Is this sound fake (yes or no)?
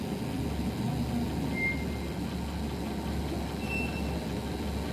no